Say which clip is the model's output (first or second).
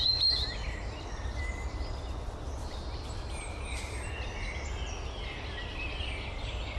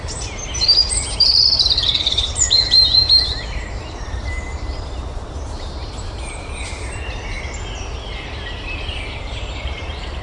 second